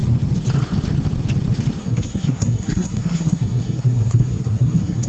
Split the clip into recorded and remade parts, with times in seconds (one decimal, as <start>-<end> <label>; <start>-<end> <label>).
0.0-1.8 recorded; 1.8-5.1 remade